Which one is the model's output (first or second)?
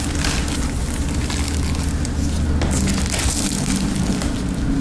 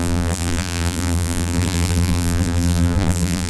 second